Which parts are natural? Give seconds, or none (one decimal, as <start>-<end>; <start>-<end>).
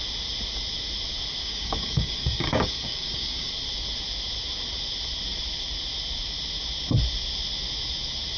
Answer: 0.0-1.4; 3.5-8.4